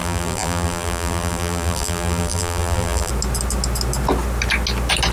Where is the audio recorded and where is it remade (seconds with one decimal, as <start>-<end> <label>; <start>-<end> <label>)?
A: 0.0-3.1 remade; 3.1-5.1 recorded